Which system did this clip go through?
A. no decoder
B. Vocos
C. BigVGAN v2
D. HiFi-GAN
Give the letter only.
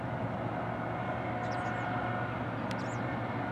A